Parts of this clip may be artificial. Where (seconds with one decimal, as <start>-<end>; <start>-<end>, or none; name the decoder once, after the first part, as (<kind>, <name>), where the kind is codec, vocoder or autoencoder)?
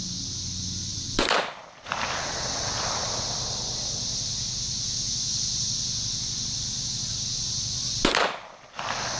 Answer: 0.9-1.8 (vocoder, BigVGAN v2)